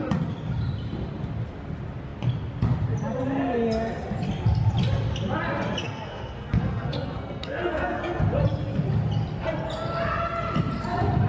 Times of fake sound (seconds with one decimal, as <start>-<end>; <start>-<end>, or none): 5.8-8.2